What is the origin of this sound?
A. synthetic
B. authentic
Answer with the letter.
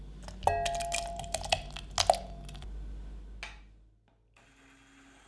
B